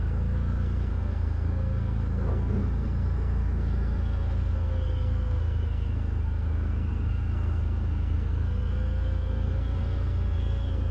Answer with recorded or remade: remade